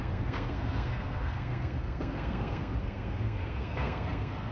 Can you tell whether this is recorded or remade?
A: remade